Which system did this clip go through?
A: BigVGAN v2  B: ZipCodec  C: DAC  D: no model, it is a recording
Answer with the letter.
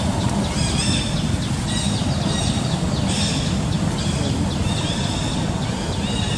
D